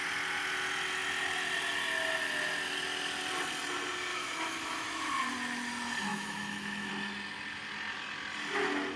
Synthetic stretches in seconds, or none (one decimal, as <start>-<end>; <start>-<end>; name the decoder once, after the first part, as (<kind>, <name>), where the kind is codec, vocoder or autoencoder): 4.1-5.2 (autoencoder, DAC-VAE); 6.1-6.9